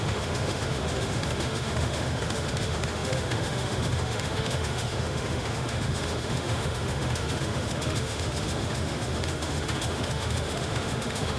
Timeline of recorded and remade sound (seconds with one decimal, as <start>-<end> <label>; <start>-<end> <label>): 0.0-11.4 remade